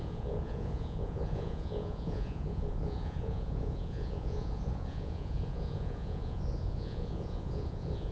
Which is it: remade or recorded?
remade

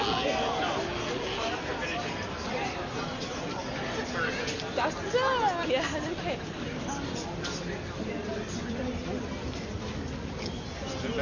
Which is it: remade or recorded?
recorded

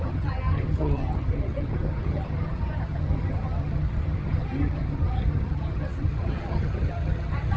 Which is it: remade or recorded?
remade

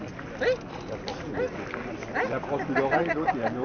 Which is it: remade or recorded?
recorded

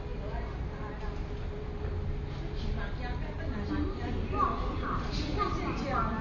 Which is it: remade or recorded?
recorded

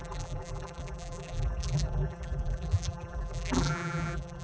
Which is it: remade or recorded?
remade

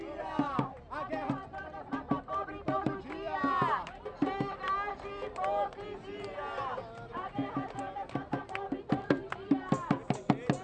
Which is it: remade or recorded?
recorded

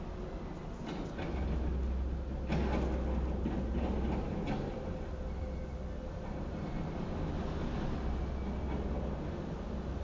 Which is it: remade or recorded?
recorded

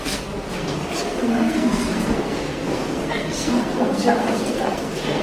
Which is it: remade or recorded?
remade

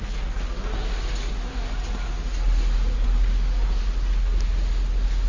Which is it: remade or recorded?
recorded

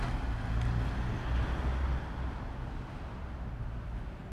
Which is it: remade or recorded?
recorded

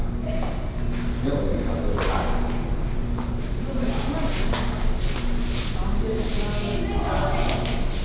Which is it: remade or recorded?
recorded